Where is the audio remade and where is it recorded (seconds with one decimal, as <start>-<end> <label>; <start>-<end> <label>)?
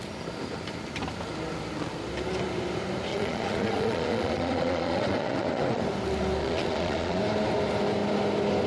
0.0-3.1 recorded; 3.1-5.8 remade; 5.8-6.4 recorded; 6.4-7.2 remade; 7.2-8.7 recorded